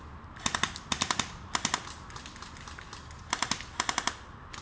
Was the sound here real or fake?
real